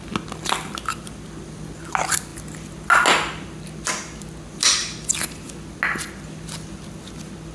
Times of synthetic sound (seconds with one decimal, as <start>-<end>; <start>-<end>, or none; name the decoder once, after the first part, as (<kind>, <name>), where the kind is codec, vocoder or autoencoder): none